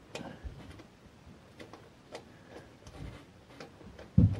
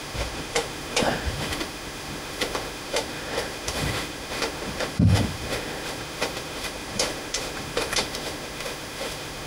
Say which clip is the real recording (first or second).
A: first